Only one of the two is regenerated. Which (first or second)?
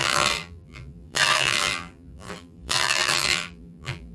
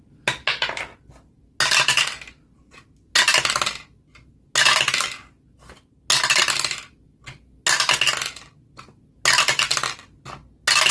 first